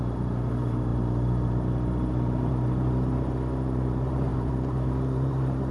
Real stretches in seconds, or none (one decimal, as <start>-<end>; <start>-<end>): none